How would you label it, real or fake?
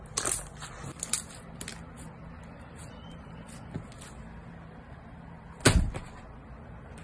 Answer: real